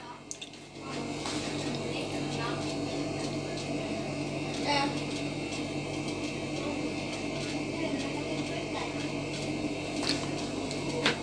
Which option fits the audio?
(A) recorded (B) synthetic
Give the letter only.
A